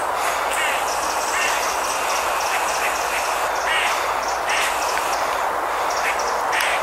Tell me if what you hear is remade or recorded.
recorded